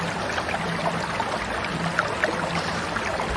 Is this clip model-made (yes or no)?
no